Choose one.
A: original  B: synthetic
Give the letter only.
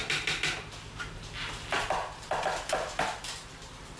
A